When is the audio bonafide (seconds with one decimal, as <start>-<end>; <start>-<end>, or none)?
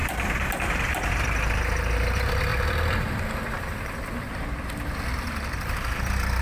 1.1-2.5